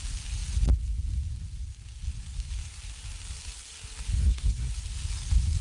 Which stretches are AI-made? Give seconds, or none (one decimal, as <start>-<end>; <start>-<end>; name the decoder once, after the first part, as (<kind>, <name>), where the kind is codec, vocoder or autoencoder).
4.2-4.7 (codec, SNAC)